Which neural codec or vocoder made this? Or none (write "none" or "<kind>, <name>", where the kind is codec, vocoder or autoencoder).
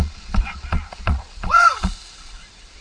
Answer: vocoder, Vocos